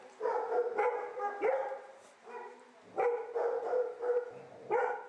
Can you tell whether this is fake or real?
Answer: real